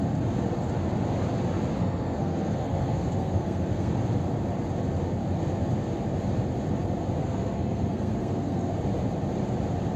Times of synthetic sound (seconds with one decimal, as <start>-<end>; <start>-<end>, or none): 1.8-3.9; 7.2-8.7